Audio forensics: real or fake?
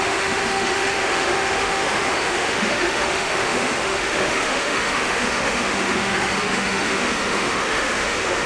fake